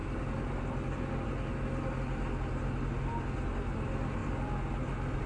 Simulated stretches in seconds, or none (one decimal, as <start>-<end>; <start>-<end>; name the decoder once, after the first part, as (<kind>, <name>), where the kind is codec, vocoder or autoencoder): none